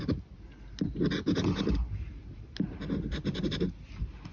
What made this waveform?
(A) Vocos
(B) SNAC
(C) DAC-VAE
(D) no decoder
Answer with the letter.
D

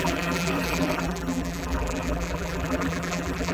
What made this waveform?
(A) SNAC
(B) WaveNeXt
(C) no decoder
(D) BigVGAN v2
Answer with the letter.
D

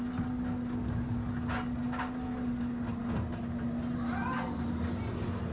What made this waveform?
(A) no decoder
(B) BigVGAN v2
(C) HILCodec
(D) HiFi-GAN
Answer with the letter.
A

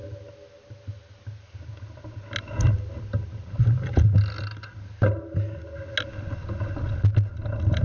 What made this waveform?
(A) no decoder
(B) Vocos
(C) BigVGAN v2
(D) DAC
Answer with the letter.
A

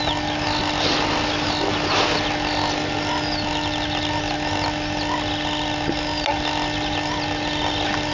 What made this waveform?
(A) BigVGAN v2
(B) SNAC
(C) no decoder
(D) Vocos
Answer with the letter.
C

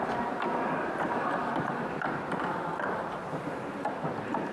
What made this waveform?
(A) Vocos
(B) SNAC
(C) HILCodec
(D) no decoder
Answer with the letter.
D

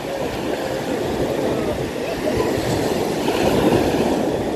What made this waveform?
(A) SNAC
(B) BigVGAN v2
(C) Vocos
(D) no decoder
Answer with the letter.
D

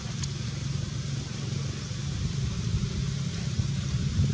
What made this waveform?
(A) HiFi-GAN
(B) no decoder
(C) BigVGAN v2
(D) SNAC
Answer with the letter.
B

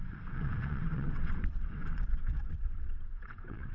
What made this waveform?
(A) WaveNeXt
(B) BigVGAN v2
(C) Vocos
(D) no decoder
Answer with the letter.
A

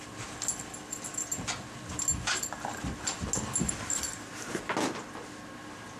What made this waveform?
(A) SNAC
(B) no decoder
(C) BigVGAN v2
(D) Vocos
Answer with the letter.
B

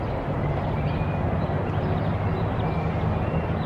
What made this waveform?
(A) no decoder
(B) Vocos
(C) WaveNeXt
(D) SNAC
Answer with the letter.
A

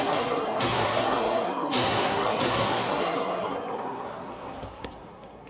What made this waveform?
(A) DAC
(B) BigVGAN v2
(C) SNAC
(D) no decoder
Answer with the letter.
C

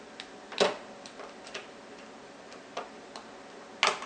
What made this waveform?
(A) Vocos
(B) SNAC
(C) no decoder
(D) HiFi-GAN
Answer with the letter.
C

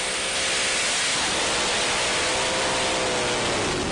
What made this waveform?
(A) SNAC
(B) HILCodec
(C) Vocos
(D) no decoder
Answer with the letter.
D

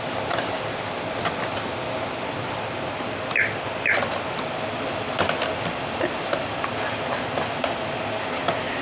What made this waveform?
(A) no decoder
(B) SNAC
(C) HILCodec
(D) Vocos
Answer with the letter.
A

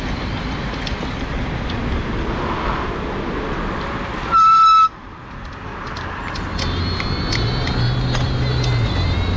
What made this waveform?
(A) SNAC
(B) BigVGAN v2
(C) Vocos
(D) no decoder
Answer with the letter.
D